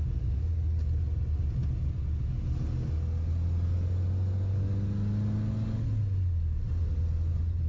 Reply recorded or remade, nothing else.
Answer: recorded